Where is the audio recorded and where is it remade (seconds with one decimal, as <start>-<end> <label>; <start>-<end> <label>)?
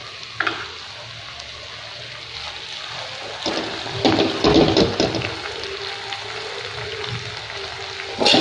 0.0-8.4 recorded